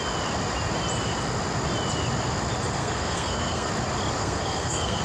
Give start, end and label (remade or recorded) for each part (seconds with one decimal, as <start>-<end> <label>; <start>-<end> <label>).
0.0-2.8 recorded; 2.8-3.7 remade; 3.7-4.2 recorded; 4.2-5.0 remade